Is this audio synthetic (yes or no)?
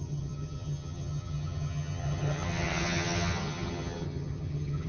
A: yes